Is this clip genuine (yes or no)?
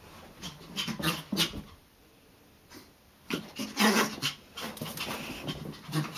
no